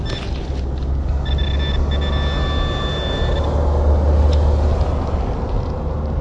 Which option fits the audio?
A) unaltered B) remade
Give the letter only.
A